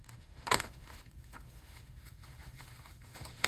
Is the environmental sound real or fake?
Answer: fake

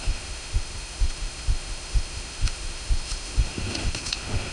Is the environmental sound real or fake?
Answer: fake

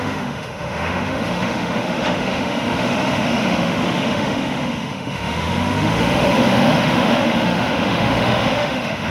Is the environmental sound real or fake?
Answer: fake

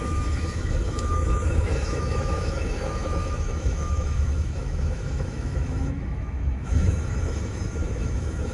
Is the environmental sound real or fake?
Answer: fake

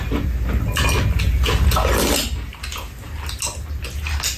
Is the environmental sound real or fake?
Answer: real